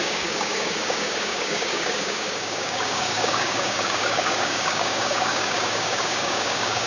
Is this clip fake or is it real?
fake